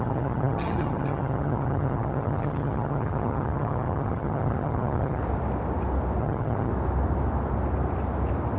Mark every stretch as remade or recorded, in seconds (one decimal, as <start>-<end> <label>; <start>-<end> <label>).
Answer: 0.0-5.2 remade; 5.2-6.2 recorded; 6.2-6.7 remade; 6.7-8.6 recorded